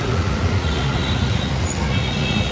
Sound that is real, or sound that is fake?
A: fake